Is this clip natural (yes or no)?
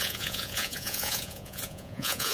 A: no